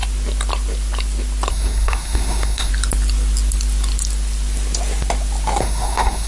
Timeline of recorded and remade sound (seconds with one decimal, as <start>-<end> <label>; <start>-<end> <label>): 0.0-1.5 recorded; 1.5-2.7 remade; 2.7-5.6 recorded; 5.6-6.3 remade